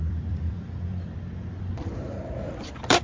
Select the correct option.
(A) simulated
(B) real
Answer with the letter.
A